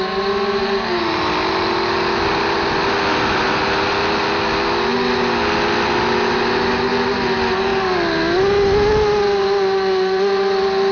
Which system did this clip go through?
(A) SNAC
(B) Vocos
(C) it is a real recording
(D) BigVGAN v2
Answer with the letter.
C